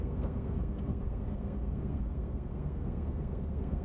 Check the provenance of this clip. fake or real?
fake